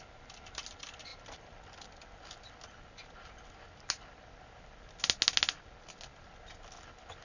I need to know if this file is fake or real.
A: real